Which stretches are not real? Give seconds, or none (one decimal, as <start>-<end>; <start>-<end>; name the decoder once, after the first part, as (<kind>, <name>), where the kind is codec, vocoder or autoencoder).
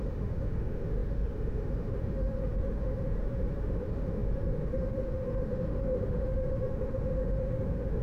0.0-8.0 (autoencoder, DAC-VAE)